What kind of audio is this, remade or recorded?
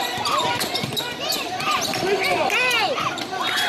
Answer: recorded